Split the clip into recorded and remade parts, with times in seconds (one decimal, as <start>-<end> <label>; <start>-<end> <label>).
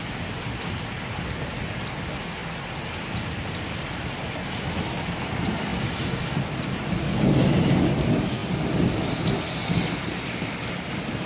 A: 0.0-11.3 recorded